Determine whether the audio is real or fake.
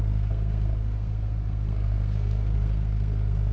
fake